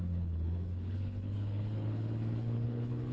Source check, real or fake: fake